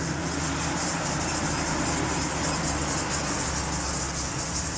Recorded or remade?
recorded